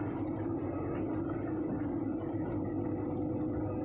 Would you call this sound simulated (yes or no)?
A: no